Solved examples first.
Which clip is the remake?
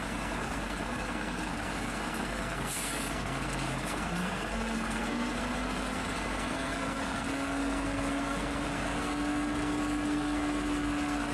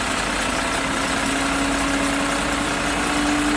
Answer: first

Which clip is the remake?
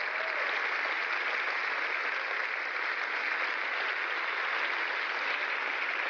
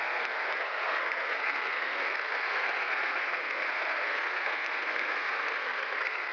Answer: second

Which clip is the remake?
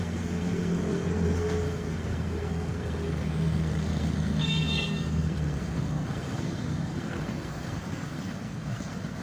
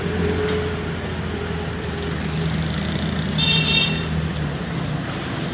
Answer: first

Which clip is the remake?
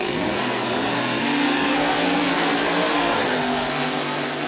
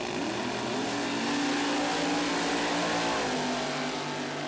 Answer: first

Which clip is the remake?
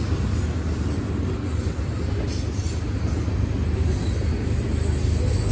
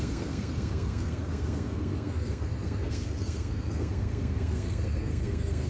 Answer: second